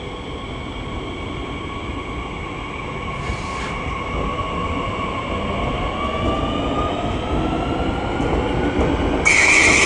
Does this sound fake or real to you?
real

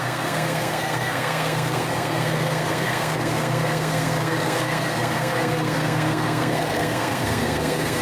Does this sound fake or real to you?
fake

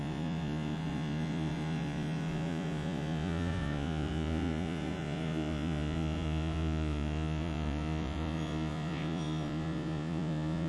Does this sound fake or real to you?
fake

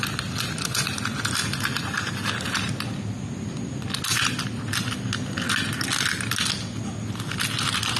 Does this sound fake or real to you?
real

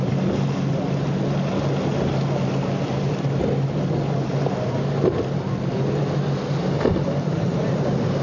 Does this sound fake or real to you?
real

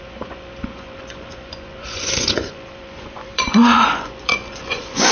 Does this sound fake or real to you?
fake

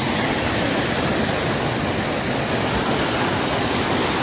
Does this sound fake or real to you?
real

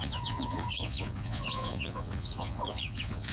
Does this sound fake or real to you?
fake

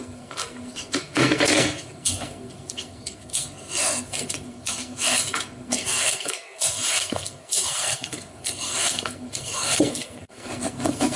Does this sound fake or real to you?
fake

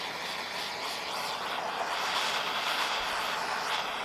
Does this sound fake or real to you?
real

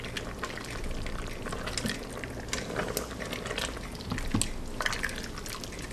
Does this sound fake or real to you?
real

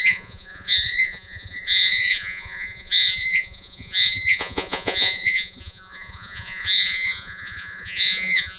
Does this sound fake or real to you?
fake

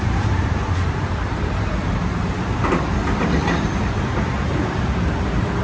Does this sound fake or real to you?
fake